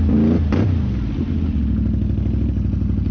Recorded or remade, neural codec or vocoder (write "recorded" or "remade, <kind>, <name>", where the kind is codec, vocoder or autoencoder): recorded